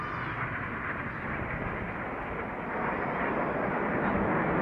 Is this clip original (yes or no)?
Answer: yes